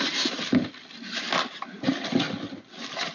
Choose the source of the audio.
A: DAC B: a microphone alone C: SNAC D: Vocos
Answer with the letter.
B